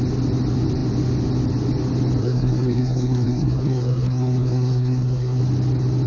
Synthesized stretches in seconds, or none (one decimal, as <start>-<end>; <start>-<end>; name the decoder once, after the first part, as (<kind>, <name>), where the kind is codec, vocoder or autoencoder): 2.2-5.4 (codec, SNAC)